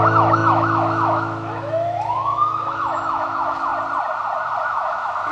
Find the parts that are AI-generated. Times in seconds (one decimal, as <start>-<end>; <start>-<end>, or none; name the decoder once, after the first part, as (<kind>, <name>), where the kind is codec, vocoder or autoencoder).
0.0-3.7 (autoencoder, DAC-VAE); 4.6-5.3